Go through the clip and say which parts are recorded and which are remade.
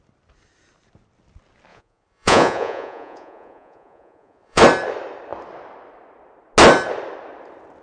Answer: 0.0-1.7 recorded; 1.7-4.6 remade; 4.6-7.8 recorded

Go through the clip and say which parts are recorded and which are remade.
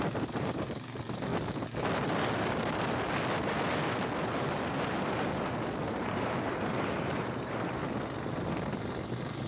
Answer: 0.0-1.3 remade; 1.3-5.8 recorded; 5.8-7.8 remade; 7.8-8.7 recorded; 8.7-9.5 remade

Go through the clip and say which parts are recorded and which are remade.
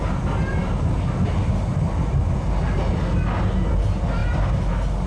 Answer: 0.0-5.1 recorded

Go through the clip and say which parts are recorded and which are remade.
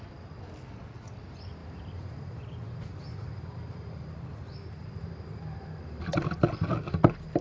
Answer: 0.0-1.6 recorded; 1.6-6.0 remade; 6.0-7.4 recorded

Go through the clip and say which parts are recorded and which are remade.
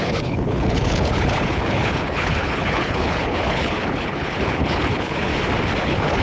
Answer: 0.0-5.3 remade; 5.3-5.8 recorded; 5.8-6.2 remade